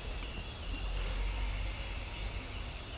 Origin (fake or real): real